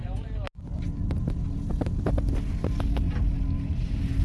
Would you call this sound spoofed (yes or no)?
no